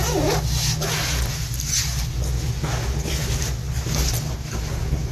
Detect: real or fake real